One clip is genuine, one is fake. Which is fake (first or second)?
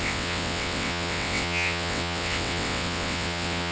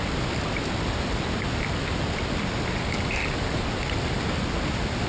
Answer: first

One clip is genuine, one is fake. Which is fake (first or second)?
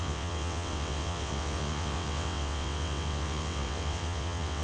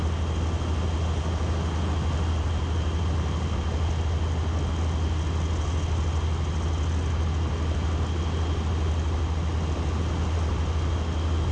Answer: first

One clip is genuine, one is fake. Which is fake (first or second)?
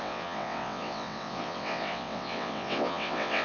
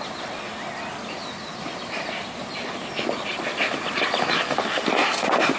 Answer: first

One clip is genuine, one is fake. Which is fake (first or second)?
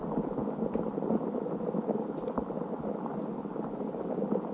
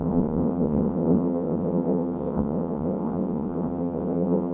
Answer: second